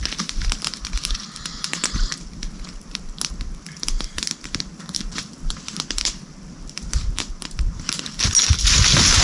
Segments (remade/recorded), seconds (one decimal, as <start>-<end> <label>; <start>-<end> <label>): 0.0-9.2 remade